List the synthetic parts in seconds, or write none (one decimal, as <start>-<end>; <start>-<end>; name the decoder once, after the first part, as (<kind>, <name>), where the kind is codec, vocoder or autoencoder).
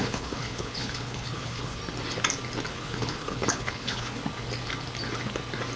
0.0-1.8 (codec, HILCodec); 2.7-4.2